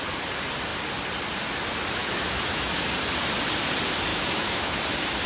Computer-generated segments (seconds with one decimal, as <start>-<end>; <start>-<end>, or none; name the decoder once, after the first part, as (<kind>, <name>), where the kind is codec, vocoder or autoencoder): 2.0-2.9 (autoencoder, DAC-VAE); 4.1-4.8